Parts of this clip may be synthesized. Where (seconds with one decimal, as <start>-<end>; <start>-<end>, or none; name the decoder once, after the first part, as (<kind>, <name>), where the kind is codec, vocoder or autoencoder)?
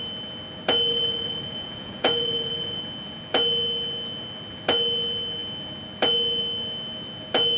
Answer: 0.9-2.8 (vocoder, Vocos)